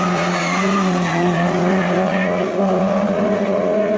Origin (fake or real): fake